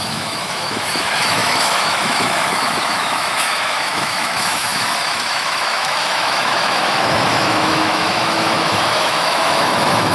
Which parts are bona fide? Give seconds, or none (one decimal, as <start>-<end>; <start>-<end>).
none

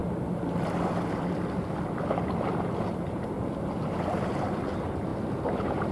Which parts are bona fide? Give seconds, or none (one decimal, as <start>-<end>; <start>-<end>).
0.0-5.9

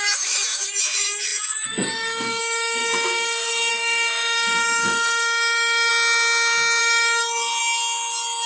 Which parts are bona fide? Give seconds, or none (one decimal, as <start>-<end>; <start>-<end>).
5.9-6.8; 7.6-8.5

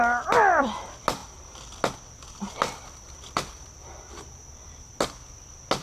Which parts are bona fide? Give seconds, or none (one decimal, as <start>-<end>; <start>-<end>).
0.0-5.8

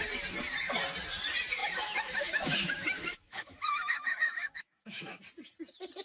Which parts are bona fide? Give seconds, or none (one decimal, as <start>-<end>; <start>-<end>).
0.0-1.6; 5.2-6.0